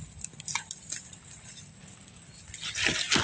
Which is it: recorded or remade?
recorded